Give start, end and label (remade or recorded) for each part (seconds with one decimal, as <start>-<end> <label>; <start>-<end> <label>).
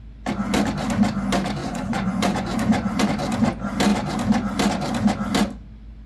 0.0-1.6 recorded; 1.6-3.0 remade; 3.0-6.1 recorded